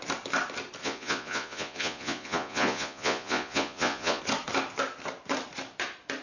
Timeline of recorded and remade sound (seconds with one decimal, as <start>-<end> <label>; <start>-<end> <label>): 0.0-0.8 recorded; 0.8-4.2 remade; 4.2-6.2 recorded